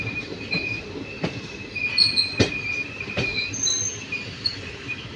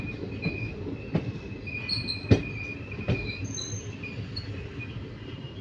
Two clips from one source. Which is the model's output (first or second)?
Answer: first